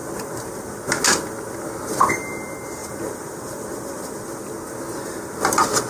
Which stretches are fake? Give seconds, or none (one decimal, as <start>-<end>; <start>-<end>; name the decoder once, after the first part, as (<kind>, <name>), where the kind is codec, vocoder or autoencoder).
2.8-4.5 (vocoder, BigVGAN v2)

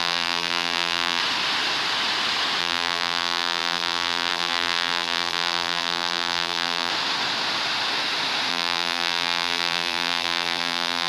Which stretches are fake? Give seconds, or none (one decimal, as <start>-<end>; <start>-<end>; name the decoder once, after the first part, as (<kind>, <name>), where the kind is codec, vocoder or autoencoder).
0.0-1.2 (vocoder, BigVGAN v2); 2.6-6.9; 8.5-11.1

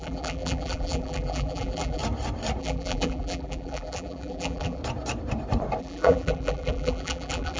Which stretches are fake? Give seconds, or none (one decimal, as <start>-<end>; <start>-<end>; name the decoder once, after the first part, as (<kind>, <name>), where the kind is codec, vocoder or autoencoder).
0.0-2.0 (vocoder, BigVGAN v2); 2.6-4.8; 5.8-7.6

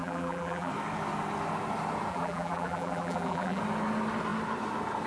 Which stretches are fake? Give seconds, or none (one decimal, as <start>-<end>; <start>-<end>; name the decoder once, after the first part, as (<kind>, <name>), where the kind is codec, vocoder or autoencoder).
0.0-0.7 (vocoder, BigVGAN v2); 2.1-3.6

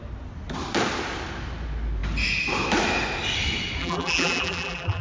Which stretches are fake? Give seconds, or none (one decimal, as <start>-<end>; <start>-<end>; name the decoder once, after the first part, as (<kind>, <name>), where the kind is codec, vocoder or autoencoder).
3.8-5.0 (vocoder, BigVGAN v2)

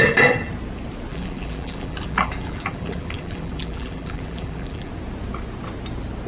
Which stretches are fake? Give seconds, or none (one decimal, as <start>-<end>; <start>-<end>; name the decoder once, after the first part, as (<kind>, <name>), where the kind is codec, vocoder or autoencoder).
1.1-4.9 (vocoder, BigVGAN v2)

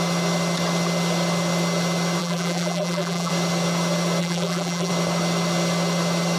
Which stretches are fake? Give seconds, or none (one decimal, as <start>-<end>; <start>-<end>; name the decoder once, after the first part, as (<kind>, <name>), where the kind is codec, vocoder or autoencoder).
2.2-3.3 (vocoder, BigVGAN v2); 4.2-4.9